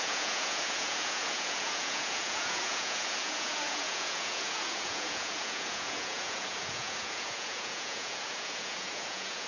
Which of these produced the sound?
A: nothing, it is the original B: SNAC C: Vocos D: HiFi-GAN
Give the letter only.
C